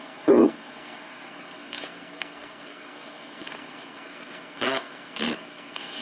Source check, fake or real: fake